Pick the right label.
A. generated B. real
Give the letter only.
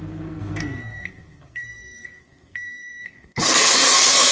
A